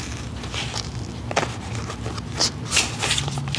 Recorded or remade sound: recorded